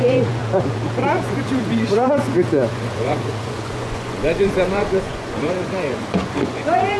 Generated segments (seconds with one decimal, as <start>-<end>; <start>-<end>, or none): 0.0-7.0